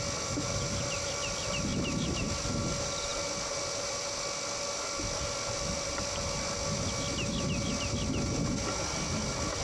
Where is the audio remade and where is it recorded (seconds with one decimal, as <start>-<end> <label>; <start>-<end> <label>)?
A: 0.0-9.6 recorded